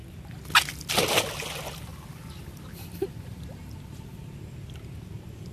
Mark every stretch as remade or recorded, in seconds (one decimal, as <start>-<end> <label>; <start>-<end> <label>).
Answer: 0.0-5.5 recorded

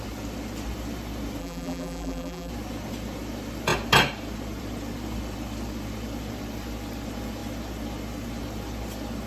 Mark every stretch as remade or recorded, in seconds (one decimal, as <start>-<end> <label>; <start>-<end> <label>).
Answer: 0.0-1.4 recorded; 1.4-2.5 remade; 2.5-9.3 recorded

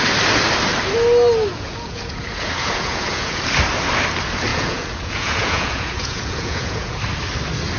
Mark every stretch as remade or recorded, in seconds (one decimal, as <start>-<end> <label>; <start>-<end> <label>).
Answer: 0.0-1.5 recorded; 1.5-3.4 remade; 3.4-4.5 recorded; 4.5-7.0 remade; 7.0-7.8 recorded

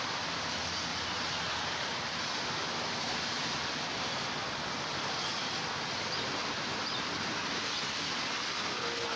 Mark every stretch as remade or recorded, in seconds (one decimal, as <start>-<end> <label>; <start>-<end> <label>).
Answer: 0.0-0.9 remade; 0.9-4.8 recorded; 4.8-5.3 remade; 5.3-5.9 recorded; 5.9-9.2 remade

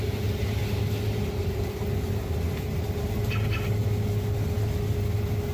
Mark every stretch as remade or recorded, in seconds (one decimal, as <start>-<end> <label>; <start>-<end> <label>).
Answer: 0.0-5.5 recorded

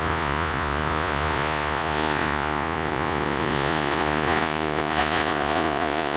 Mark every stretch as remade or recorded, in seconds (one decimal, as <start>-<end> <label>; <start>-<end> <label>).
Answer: 0.0-6.2 remade